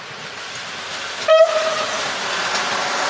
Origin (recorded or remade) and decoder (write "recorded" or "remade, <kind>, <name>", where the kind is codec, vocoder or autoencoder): recorded